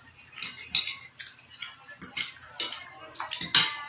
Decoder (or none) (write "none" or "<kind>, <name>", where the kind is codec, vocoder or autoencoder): none